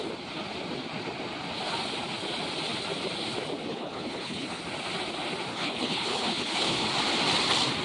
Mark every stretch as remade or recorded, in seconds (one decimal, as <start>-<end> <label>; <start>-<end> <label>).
0.0-3.7 recorded; 3.7-4.6 remade; 4.6-5.5 recorded; 5.5-6.9 remade; 6.9-7.8 recorded